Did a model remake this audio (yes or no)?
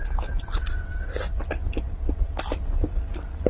no